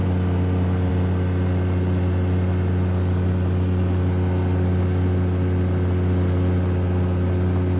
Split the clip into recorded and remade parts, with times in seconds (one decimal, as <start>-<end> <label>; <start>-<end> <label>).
0.0-7.8 recorded